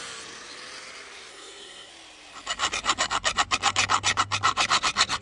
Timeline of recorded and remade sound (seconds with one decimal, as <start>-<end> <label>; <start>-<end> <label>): 0.0-1.3 recorded; 1.3-1.9 remade; 1.9-5.2 recorded